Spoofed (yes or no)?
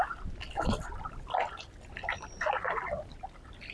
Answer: no